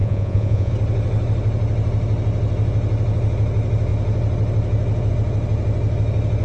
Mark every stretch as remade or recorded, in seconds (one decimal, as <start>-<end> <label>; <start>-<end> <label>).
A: 0.0-0.7 remade; 0.7-6.4 recorded